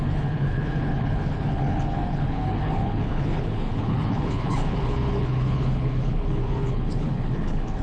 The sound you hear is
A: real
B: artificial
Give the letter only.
B